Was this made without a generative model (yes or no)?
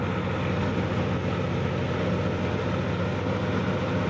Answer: yes